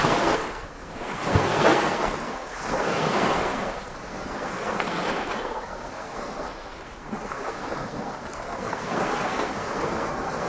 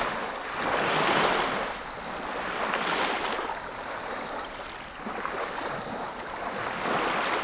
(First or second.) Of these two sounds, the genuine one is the second